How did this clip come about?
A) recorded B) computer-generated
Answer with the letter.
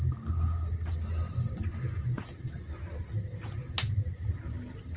A